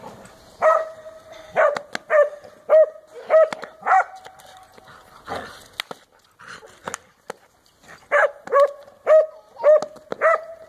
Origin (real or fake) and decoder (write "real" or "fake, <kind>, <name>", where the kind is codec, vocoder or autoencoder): real